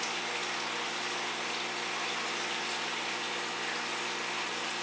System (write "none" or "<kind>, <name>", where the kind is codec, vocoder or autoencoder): none